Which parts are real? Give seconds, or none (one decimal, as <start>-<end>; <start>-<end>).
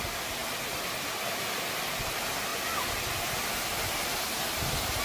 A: 0.0-5.0